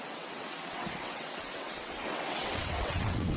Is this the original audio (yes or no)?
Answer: no